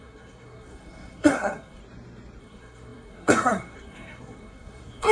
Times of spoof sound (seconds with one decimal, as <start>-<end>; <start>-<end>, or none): 0.0-1.8; 2.4-5.1